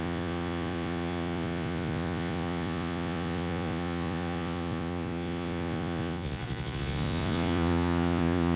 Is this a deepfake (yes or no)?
yes